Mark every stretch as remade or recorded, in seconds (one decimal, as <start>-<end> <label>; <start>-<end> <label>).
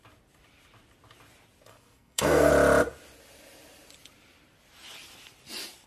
0.0-1.7 recorded; 1.7-2.5 remade; 2.5-5.9 recorded